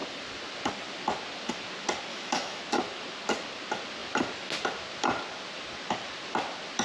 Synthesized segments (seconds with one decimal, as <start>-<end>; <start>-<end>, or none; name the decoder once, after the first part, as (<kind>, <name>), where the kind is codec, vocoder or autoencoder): 2.1-2.6 (autoencoder, DAC-VAE)